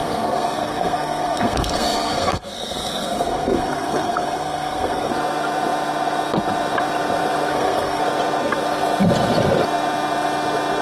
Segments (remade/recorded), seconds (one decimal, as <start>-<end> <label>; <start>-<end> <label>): 0.0-5.1 remade; 5.1-7.5 recorded; 7.5-8.0 remade; 8.0-10.8 recorded